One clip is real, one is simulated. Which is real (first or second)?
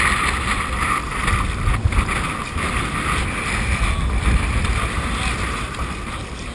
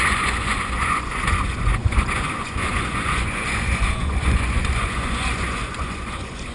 first